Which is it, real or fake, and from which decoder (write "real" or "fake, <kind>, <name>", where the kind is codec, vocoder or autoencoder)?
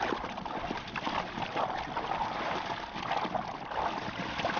real